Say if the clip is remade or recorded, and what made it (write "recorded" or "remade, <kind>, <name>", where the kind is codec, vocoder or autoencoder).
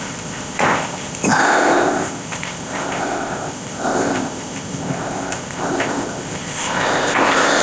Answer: remade, codec, ZipCodec